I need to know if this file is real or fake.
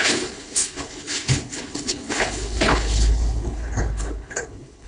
fake